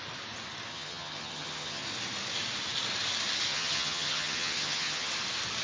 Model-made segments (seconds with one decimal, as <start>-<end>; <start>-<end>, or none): 0.7-1.8; 3.5-5.1